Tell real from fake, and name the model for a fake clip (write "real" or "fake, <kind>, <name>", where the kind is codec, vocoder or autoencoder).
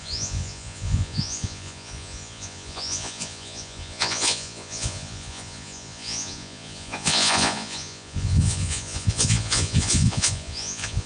fake, vocoder, Vocos